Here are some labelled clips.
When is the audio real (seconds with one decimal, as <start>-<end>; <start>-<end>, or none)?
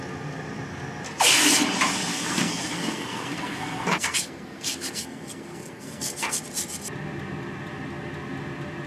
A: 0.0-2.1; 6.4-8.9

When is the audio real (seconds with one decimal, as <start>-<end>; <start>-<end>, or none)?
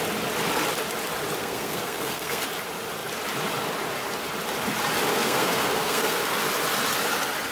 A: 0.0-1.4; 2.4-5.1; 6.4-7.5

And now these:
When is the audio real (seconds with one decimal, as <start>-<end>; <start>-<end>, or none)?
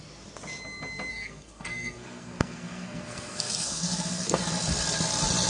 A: 0.0-1.1; 4.4-5.5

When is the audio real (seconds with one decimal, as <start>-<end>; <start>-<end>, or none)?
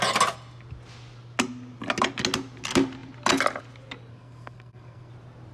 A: 0.0-4.1; 5.1-5.5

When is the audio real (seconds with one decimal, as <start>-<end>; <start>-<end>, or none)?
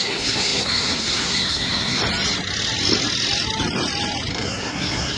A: 2.0-4.3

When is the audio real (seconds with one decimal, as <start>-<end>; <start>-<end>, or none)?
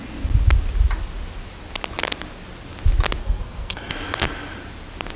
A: 0.0-3.2; 3.9-5.2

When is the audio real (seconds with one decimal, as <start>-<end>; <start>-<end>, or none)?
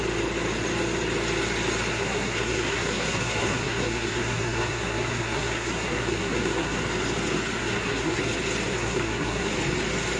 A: 0.0-1.9; 6.8-7.6; 8.2-8.7; 9.5-10.2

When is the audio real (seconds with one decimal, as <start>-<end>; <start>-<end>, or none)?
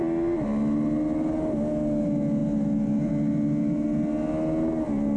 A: 0.0-5.2